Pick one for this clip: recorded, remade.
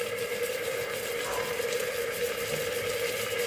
recorded